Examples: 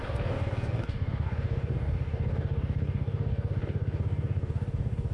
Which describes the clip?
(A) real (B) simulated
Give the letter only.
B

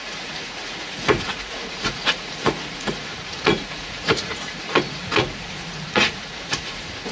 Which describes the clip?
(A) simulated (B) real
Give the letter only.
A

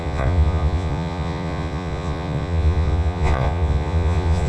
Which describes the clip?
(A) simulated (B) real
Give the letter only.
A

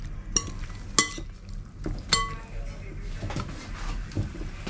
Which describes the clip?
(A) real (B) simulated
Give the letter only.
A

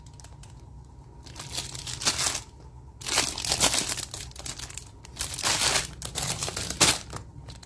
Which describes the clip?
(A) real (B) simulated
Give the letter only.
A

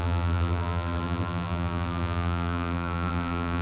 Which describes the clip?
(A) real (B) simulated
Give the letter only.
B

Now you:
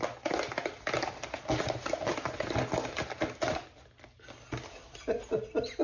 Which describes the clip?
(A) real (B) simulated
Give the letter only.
A